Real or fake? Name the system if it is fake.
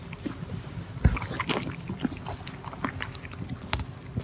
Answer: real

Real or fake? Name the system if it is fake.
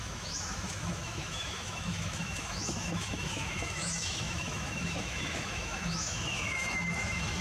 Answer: fake, autoencoder, DAC-VAE